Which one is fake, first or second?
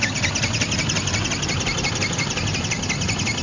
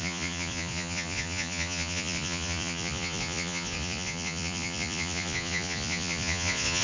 second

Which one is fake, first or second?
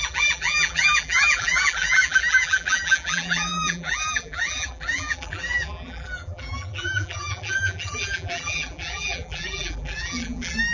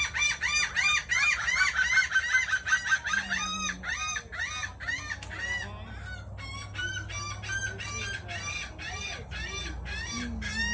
first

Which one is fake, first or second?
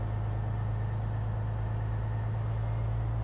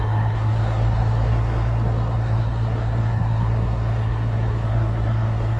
second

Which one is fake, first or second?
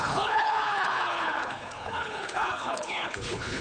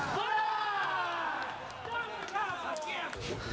first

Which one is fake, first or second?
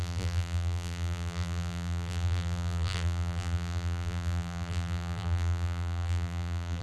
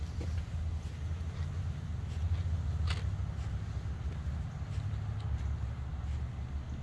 first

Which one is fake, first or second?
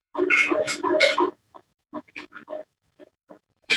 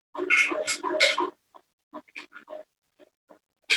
first